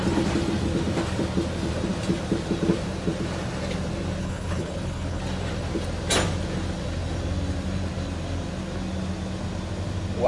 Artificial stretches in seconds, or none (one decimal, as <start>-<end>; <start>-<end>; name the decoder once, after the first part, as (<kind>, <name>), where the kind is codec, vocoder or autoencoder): 4.2-5.2 (codec, HILCodec)